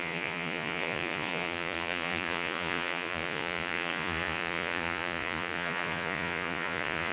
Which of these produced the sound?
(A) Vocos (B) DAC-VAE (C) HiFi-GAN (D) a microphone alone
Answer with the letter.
A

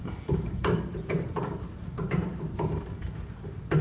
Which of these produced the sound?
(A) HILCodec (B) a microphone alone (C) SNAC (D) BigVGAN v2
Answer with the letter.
D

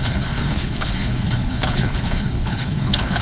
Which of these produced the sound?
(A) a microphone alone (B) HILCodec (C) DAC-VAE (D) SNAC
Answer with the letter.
B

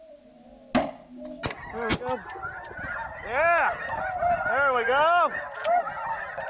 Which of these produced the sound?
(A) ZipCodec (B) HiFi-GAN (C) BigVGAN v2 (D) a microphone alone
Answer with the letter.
D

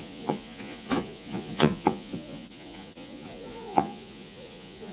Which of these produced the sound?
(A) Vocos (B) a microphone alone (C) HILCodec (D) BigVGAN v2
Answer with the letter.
A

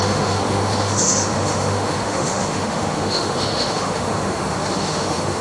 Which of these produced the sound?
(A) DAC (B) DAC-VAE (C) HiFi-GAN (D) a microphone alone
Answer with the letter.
B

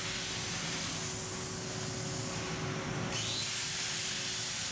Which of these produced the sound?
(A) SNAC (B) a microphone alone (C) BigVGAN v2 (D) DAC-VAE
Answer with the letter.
B